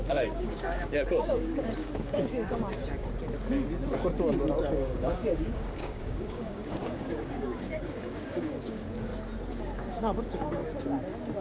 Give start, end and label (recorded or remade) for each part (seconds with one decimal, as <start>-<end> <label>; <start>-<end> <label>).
0.0-2.8 remade; 2.8-4.7 recorded; 4.7-9.1 remade; 9.1-9.6 recorded; 9.6-10.6 remade; 10.6-11.4 recorded